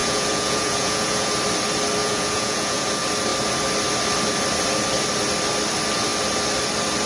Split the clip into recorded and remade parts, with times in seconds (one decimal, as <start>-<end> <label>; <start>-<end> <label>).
0.0-1.3 remade; 1.3-2.0 recorded; 2.0-2.9 remade; 2.9-7.1 recorded